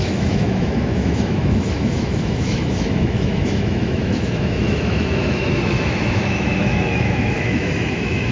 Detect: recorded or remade remade